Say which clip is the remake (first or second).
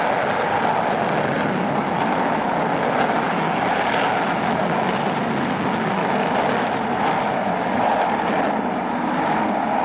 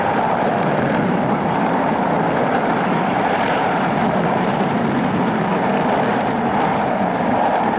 second